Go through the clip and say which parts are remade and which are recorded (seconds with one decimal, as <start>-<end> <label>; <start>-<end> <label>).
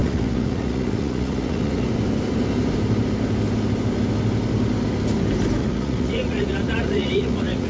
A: 0.0-1.9 remade; 1.9-5.6 recorded; 5.6-7.7 remade